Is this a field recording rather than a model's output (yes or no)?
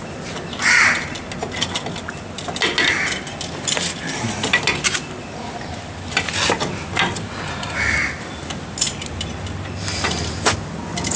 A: yes